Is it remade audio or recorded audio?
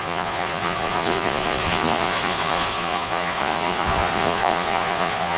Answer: remade